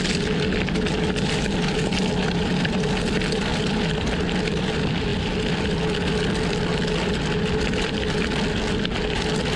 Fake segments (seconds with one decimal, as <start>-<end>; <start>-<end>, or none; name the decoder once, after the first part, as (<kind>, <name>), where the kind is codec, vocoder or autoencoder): none